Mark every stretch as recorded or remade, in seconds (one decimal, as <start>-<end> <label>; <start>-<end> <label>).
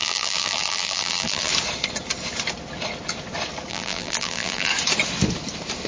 0.0-1.5 remade; 1.5-3.7 recorded; 3.7-4.7 remade; 4.7-5.9 recorded